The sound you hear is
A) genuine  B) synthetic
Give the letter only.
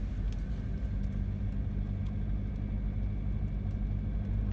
A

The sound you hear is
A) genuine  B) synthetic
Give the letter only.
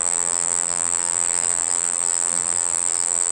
B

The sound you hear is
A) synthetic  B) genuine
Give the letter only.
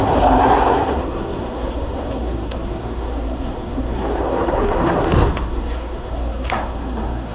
A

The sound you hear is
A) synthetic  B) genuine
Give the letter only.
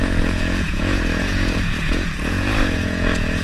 A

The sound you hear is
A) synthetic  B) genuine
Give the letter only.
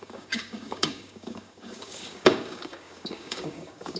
A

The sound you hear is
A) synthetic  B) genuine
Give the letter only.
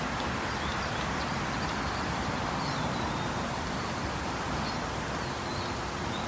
B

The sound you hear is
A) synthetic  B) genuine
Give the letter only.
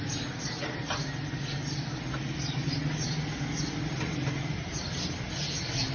B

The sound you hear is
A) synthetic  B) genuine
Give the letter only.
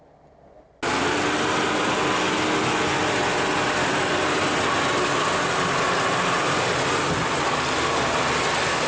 B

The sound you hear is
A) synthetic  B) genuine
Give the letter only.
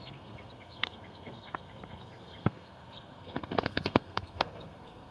A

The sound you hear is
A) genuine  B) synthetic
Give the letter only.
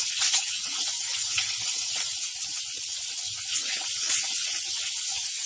B